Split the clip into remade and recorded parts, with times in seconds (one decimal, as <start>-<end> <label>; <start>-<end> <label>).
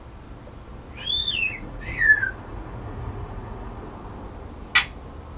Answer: 0.0-1.2 recorded; 1.2-3.9 remade; 3.9-5.4 recorded